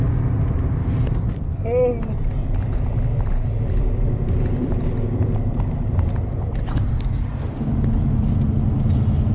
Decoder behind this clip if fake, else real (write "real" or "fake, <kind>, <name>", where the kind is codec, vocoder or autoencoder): real